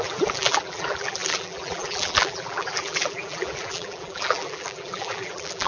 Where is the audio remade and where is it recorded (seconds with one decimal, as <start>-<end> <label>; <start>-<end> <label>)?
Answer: 0.0-5.7 remade